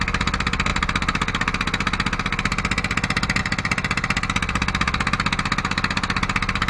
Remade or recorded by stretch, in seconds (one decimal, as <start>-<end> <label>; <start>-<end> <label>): 0.0-6.7 recorded